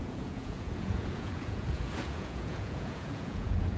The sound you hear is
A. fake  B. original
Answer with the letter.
A